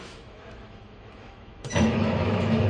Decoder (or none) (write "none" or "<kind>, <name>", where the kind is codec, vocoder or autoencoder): autoencoder, DAC-VAE